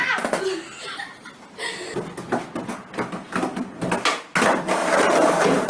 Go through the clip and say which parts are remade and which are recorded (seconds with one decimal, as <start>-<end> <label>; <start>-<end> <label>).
0.0-4.8 recorded; 4.8-5.7 remade